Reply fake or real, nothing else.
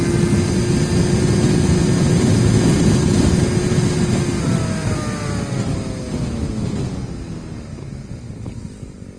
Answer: real